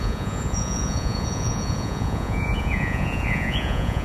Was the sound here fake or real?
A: fake